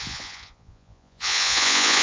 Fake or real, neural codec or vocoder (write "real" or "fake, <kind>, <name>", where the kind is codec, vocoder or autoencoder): fake, vocoder, Vocos